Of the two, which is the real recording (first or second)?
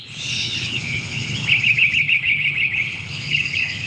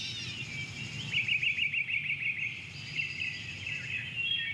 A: second